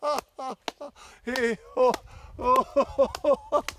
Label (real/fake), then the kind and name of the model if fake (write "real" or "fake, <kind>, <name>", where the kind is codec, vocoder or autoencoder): real